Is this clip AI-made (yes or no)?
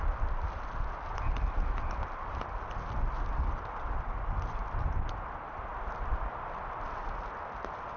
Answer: no